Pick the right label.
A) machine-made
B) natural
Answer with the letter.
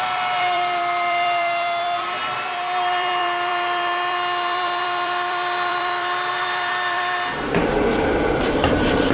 A